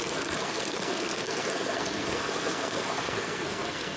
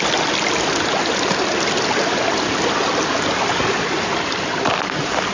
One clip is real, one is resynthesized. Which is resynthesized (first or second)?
first